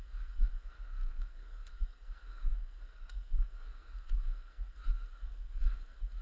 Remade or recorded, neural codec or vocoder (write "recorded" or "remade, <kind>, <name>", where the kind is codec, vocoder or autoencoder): remade, codec, SNAC